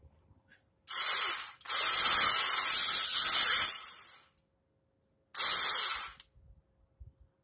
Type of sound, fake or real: real